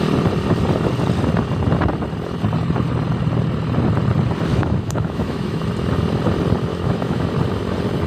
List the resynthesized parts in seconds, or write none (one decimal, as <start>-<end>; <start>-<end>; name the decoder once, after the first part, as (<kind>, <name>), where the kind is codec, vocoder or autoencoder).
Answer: 4.5-5.6 (autoencoder, DAC-VAE); 6.7-7.3